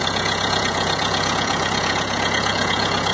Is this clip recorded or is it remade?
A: remade